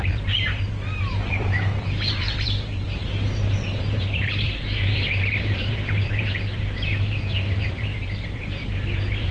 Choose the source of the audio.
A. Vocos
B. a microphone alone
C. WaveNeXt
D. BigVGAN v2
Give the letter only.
D